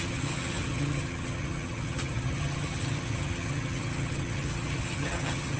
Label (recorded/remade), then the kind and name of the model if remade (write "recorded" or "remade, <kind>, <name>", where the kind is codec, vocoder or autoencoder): remade, vocoder, HiFi-GAN